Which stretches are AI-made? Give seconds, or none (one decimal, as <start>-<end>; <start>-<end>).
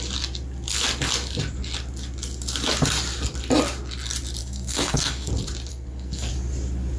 4.4-5.3; 5.7-6.3